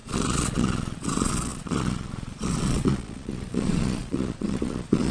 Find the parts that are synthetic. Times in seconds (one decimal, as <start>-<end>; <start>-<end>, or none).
0.0-5.1